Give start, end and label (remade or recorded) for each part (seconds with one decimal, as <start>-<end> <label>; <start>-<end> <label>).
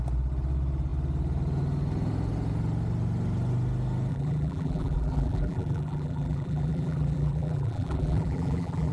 0.0-4.1 recorded; 4.1-8.9 remade